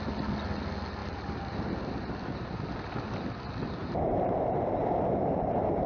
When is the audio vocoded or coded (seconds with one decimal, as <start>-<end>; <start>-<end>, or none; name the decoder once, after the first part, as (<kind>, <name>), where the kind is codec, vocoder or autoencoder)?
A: 3.8-5.9 (vocoder, BigVGAN v2)